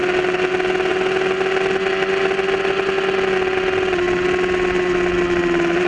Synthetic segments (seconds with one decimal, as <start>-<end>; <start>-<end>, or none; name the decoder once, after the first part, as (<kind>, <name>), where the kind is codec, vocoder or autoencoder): none